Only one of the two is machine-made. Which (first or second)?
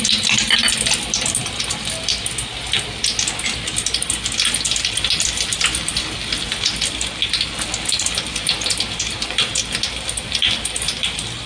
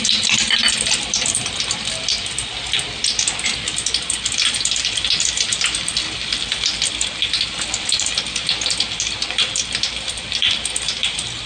second